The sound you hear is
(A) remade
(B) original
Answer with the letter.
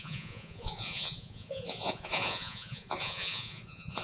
A